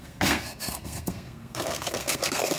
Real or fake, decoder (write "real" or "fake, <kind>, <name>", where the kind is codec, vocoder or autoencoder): fake, codec, SNAC